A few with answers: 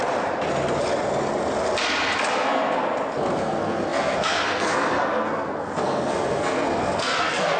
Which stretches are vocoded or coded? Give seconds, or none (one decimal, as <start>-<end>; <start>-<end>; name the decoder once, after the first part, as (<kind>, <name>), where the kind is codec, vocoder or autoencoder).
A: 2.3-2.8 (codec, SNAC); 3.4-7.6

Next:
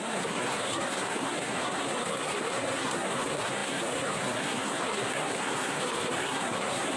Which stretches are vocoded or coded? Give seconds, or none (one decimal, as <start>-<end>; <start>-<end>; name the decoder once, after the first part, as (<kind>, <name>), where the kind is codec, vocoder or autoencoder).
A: 0.0-7.0 (codec, SNAC)

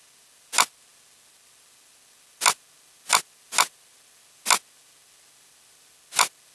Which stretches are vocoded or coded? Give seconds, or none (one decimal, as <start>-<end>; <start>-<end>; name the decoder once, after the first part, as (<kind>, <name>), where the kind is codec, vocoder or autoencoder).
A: none

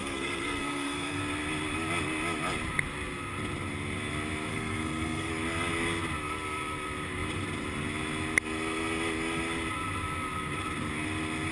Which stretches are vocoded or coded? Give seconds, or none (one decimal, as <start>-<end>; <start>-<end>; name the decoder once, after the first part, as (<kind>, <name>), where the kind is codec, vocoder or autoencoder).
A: 0.0-1.2 (codec, SNAC); 4.5-5.3